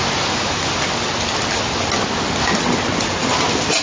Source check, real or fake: real